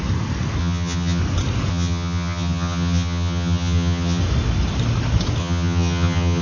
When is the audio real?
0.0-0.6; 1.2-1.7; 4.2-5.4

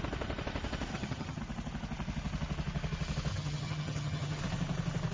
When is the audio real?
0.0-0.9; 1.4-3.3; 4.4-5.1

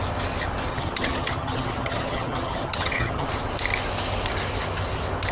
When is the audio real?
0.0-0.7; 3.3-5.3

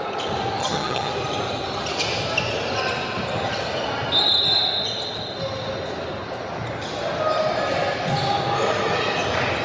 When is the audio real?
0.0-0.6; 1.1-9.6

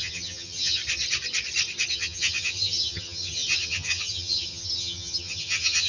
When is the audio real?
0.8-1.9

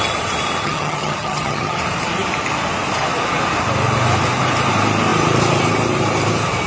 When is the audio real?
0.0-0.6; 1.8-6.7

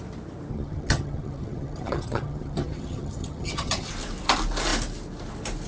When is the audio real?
0.0-0.5; 3.9-5.7